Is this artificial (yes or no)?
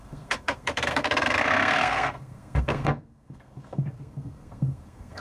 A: yes